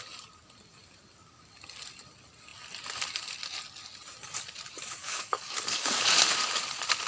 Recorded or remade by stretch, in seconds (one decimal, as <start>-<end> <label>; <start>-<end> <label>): 0.0-5.0 recorded; 5.0-6.1 remade; 6.1-7.1 recorded